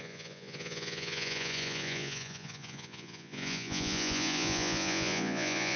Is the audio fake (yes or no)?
yes